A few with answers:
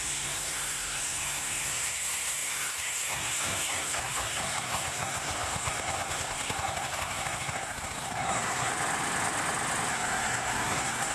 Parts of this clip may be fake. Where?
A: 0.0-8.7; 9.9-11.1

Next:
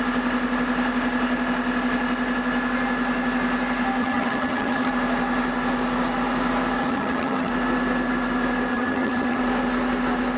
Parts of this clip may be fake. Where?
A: 4.0-4.9; 6.8-7.5; 8.7-9.4

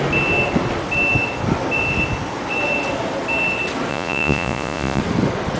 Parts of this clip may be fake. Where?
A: 3.9-5.0

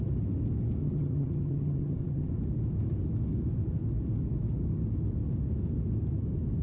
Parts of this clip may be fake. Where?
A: 0.8-2.3

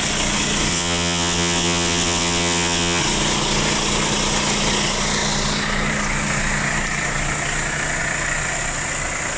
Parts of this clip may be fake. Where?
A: 0.7-3.0